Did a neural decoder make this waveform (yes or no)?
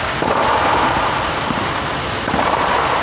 no